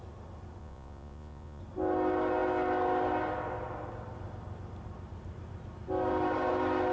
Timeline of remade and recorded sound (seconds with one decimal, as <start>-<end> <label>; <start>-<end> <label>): 0.0-0.6 recorded; 0.6-1.6 remade; 1.6-6.9 recorded